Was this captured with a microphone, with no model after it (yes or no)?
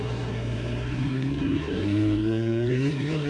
no